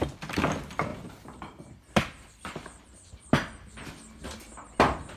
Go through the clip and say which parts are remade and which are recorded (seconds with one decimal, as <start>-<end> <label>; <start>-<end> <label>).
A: 0.0-0.9 recorded; 0.9-3.9 remade; 3.9-5.2 recorded